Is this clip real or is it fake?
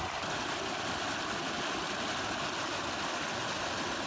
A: real